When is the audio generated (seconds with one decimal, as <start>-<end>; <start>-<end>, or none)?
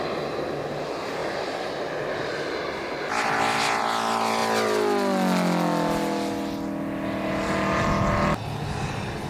none